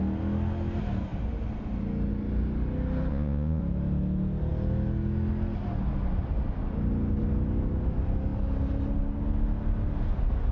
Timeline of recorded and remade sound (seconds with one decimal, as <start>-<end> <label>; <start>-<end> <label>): 0.0-3.1 recorded; 3.1-3.6 remade; 3.6-10.5 recorded